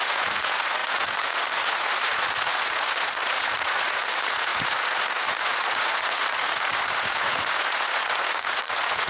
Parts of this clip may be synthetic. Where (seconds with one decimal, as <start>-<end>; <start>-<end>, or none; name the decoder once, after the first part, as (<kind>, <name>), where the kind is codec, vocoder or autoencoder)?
0.0-9.1 (vocoder, Vocos)